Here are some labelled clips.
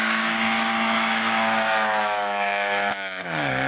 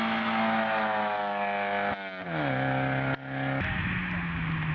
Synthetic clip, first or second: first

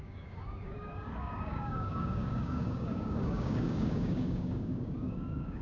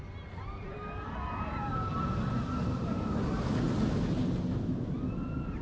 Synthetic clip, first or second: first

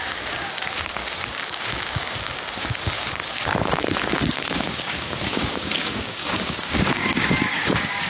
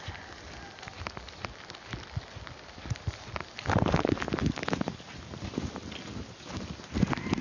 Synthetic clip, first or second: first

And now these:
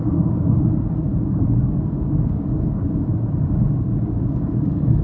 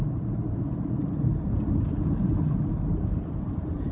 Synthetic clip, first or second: first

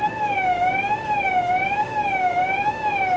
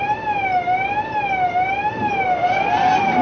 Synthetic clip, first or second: first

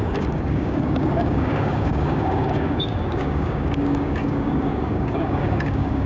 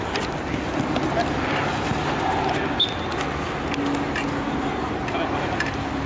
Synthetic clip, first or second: first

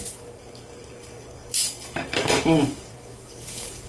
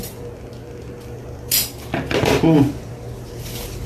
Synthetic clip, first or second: first